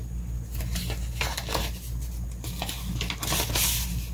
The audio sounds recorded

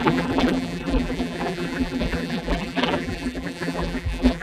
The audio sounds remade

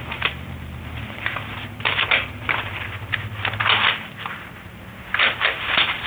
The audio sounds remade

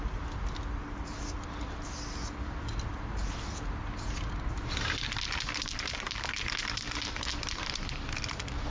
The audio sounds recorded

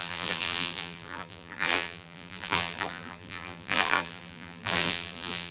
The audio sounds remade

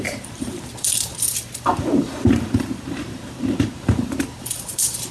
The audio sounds remade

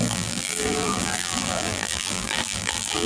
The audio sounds remade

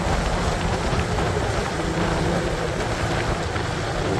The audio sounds recorded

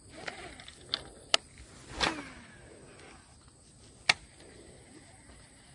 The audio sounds recorded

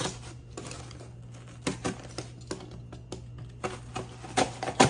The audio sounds recorded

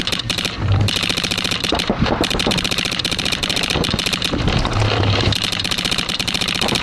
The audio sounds remade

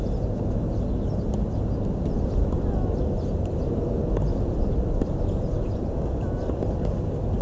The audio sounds recorded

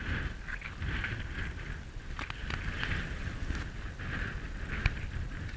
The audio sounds recorded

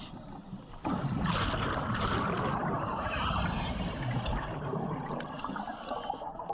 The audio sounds remade